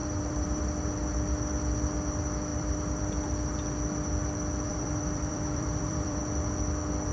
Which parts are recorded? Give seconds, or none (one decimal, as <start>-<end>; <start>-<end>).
0.6-2.5; 3.1-4.7; 6.2-7.1